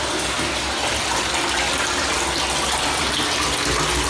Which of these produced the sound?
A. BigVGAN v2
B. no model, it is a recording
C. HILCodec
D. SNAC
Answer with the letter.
B